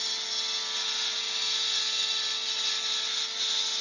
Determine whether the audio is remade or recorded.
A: recorded